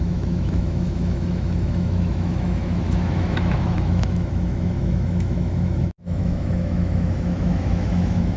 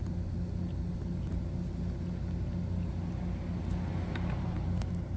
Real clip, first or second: second